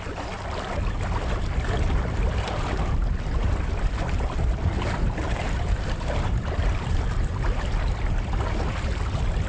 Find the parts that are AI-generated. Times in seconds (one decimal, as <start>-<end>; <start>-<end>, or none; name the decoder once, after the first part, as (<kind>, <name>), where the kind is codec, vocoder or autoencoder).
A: 5.2-7.4 (vocoder, BigVGAN v2)